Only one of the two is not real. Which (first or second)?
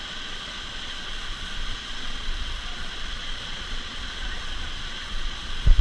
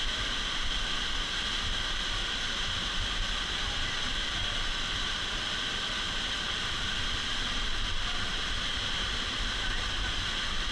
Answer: first